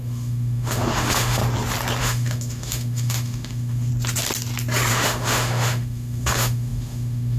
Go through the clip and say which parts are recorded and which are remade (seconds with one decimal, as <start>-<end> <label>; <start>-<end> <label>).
0.0-1.4 remade; 1.4-2.0 recorded; 2.0-3.9 remade; 3.9-4.9 recorded; 4.9-7.4 remade